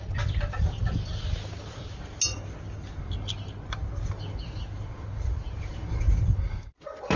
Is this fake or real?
real